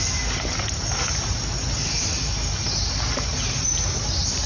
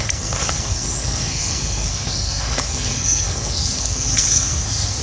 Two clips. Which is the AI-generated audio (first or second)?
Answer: second